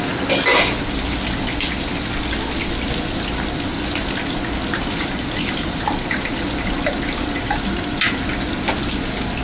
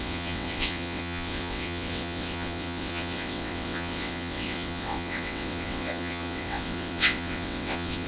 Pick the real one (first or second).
first